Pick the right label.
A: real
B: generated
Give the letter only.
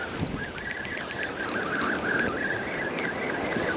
A